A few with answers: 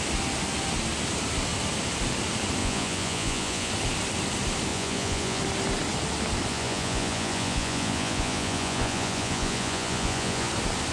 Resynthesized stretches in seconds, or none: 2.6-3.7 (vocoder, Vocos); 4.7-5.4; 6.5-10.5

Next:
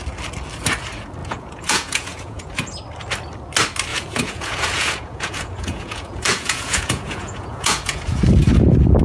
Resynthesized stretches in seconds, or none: 1.2-2.5 (vocoder, Vocos); 3.9-8.2